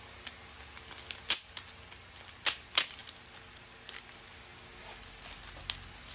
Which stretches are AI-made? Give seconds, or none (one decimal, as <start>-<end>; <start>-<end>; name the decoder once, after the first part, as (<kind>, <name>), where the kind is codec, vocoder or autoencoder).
none